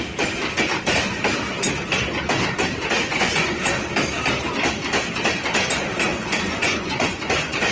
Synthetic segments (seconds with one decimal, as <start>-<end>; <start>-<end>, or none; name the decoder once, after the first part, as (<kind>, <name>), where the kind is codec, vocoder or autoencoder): 3.1-3.7 (vocoder, Vocos); 6.1-7.7